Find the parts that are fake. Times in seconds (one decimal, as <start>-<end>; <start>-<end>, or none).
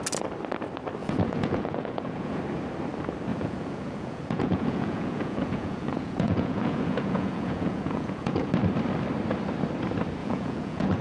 1.0-2.4; 3.3-8.5; 10.2-11.0